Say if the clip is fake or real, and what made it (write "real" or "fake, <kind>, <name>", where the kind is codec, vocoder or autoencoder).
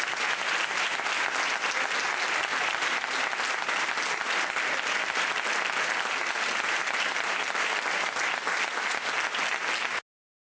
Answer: real